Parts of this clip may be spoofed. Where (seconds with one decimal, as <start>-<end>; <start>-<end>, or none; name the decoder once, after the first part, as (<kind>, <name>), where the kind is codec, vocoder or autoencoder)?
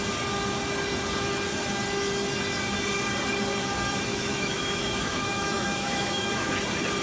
4.1-6.5 (autoencoder, DAC-VAE)